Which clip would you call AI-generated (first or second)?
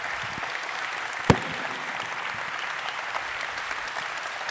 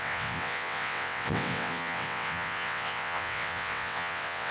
second